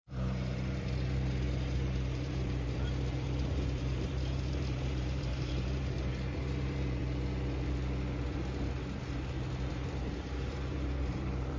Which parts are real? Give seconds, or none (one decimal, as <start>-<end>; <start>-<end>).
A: 7.0-9.7